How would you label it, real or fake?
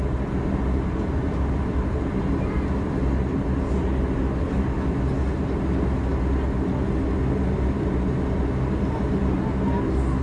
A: real